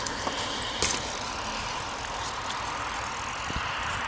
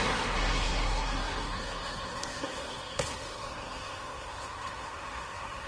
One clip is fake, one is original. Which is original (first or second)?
first